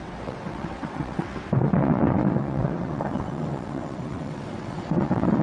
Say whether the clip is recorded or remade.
remade